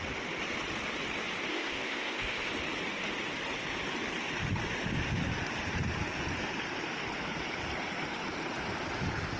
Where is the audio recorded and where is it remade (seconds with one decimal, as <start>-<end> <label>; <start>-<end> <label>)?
0.0-1.5 recorded; 1.5-2.5 remade; 2.5-9.4 recorded